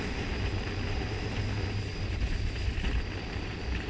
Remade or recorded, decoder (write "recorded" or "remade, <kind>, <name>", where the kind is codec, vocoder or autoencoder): recorded